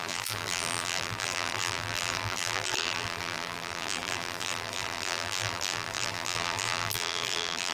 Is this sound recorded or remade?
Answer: remade